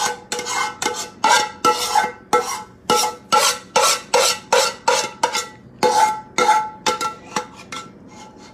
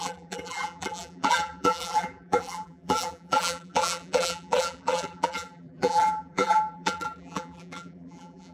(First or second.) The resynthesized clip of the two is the second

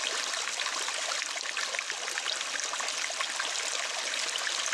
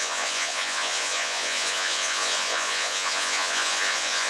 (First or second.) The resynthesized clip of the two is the second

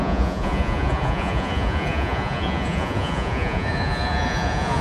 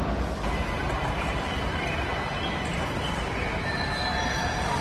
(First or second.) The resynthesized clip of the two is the first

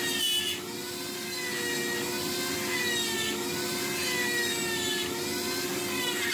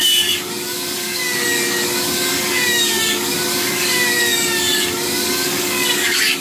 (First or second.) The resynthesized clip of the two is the second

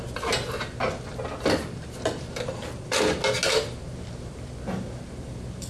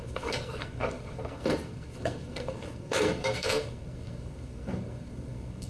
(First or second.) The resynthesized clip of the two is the second